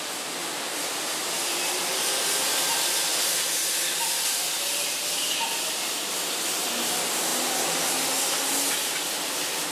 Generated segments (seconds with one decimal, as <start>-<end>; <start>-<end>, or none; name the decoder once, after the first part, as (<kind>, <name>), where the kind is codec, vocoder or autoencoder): none